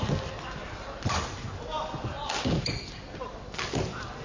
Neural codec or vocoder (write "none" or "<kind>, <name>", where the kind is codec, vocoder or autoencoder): none